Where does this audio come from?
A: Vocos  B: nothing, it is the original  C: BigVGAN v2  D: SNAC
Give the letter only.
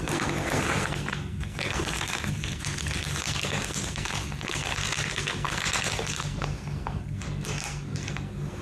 D